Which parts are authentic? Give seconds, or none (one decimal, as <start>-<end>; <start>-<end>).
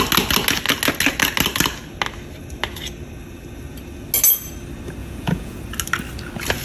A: 0.0-5.0; 5.6-6.6